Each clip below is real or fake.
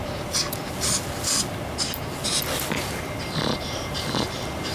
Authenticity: real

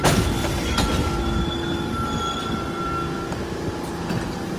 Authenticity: real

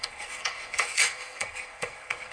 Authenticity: fake